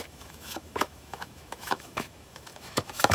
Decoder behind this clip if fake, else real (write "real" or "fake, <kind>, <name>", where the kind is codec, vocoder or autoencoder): fake, autoencoder, DAC-VAE